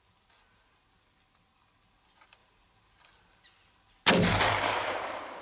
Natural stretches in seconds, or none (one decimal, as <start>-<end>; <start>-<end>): 0.0-5.4